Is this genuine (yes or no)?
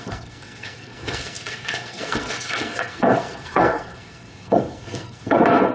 no